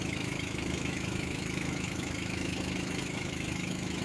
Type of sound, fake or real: fake